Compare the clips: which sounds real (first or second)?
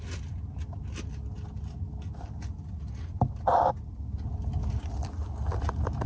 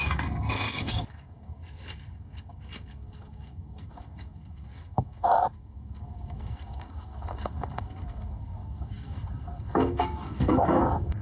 first